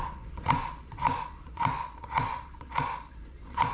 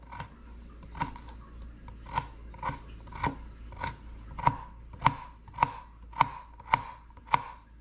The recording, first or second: second